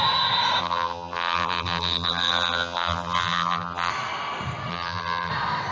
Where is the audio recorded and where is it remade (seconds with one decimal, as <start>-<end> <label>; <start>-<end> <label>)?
0.0-0.6 recorded; 0.6-3.9 remade; 3.9-4.7 recorded; 4.7-5.3 remade; 5.3-5.7 recorded